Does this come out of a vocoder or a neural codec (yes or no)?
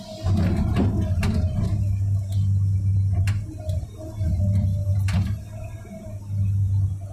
no